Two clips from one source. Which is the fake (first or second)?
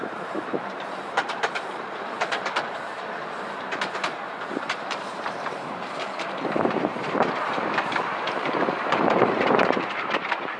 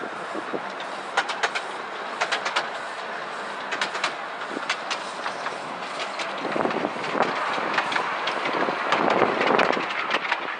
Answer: first